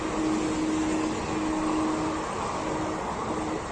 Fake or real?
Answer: real